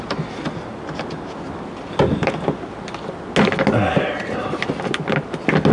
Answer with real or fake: real